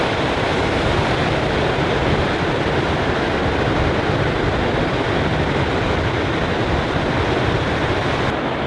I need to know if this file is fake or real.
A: real